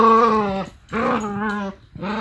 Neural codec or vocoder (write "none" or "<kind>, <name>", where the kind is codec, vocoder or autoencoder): none